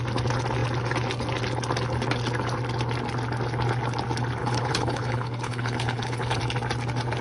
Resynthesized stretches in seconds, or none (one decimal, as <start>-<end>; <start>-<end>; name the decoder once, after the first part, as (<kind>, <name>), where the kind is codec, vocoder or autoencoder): 4.4-6.4 (codec, HILCodec)